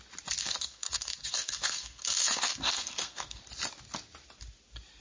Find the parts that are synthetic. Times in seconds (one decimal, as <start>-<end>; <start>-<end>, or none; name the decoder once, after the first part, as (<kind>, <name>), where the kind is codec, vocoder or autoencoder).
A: 0.4-3.4 (codec, SNAC)